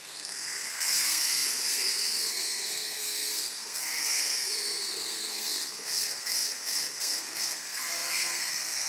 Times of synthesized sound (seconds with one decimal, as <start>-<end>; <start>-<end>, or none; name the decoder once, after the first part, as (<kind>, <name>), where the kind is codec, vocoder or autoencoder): 0.0-8.9 (codec, SNAC)